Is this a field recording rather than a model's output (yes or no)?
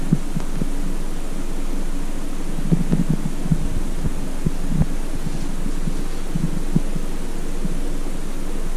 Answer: yes